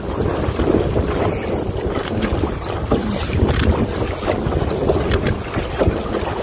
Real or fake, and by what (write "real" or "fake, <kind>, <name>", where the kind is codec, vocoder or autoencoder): real